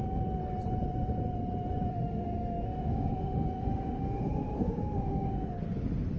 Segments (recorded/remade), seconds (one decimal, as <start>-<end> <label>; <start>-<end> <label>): 0.0-1.9 recorded; 1.9-5.5 remade; 5.5-6.2 recorded